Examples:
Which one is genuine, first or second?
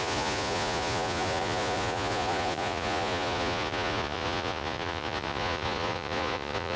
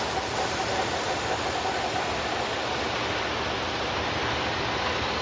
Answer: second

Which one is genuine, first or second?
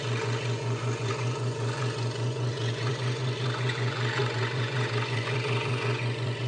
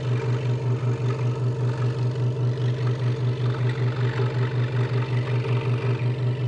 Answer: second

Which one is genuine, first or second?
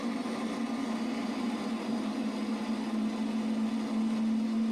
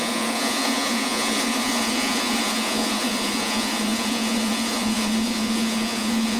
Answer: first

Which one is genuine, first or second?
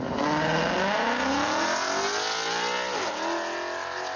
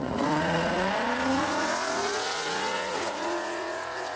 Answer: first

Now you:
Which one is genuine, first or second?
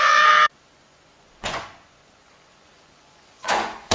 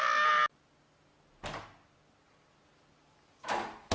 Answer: second